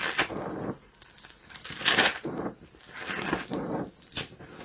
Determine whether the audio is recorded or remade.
recorded